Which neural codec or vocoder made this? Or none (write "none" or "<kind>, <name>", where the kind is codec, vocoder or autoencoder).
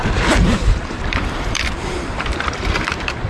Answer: vocoder, BigVGAN v2